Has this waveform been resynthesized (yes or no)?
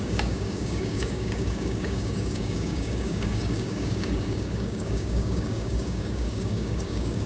yes